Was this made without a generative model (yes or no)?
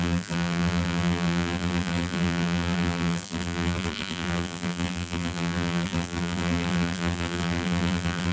no